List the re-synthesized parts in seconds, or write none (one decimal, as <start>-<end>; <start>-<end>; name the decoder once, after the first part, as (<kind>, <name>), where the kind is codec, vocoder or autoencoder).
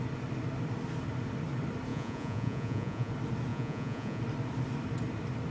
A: 1.9-3.1 (vocoder, Vocos); 3.5-4.2